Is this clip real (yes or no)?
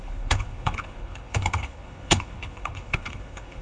no